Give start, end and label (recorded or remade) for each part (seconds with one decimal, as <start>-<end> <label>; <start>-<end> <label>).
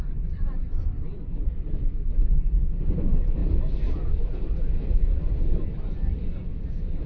0.0-1.4 remade; 1.4-2.8 recorded; 2.8-3.4 remade; 3.4-5.9 recorded; 5.9-6.5 remade; 6.5-7.1 recorded